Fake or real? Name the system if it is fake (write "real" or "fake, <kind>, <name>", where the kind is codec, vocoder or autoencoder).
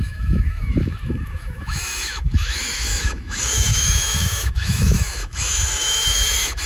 fake, autoencoder, DAC-VAE